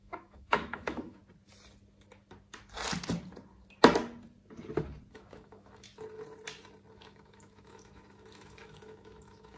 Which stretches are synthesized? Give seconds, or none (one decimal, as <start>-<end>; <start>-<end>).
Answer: 0.0-1.2; 5.1-5.9; 6.9-9.6